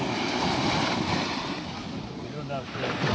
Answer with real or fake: real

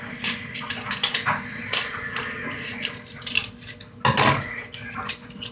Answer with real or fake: real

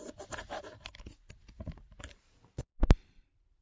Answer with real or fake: fake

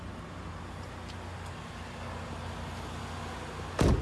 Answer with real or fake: real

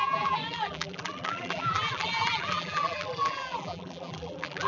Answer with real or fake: fake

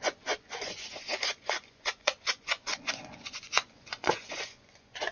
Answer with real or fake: fake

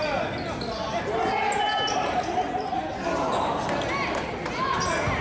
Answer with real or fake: real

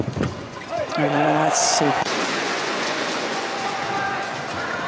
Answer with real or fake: fake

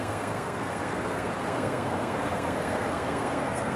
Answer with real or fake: fake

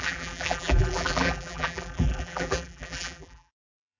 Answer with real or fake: fake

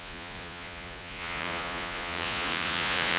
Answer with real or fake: fake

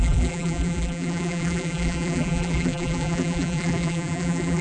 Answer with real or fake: fake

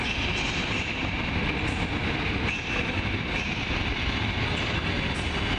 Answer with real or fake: real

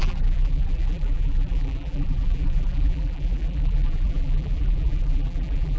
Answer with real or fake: fake